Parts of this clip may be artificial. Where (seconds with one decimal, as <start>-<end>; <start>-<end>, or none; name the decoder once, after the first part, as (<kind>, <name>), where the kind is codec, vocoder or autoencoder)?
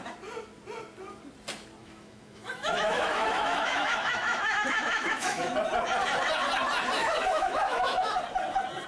1.8-5.5 (autoencoder, DAC-VAE); 7.0-8.1